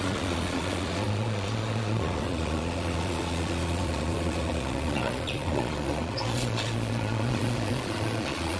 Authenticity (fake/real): fake